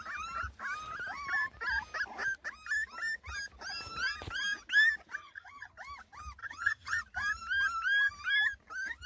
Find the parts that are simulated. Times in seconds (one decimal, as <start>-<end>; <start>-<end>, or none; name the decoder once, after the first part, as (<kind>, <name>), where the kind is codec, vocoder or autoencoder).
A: 5.2-5.7 (vocoder, HiFi-GAN); 6.4-7.0